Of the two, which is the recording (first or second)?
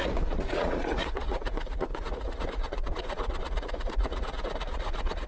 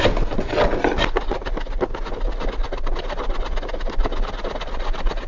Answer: second